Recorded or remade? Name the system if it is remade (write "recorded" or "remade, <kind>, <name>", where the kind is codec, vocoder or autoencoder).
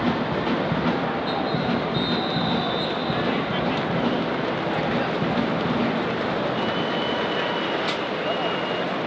recorded